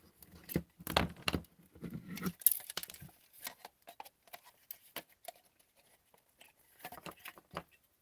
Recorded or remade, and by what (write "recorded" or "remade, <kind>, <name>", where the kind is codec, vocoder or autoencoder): recorded